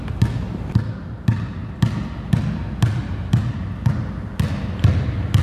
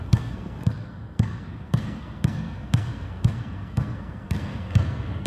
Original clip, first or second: first